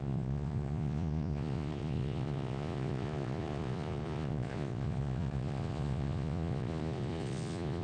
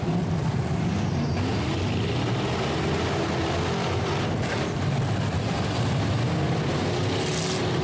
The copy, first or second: first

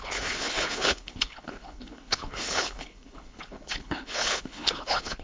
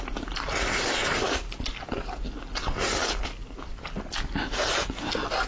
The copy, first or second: first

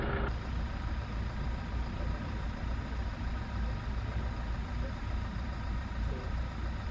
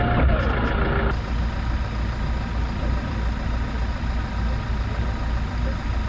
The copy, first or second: first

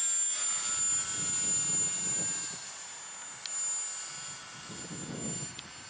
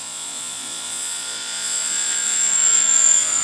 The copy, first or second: second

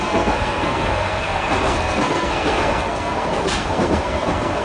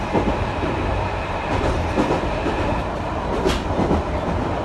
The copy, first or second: first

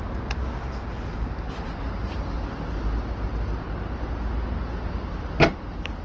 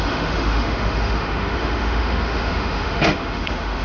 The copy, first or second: second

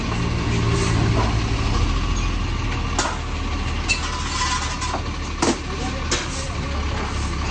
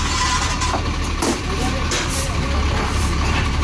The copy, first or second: second